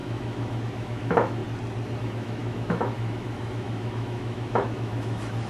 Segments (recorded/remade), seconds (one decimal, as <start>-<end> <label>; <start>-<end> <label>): 0.0-1.4 remade; 1.4-2.0 recorded; 2.0-5.5 remade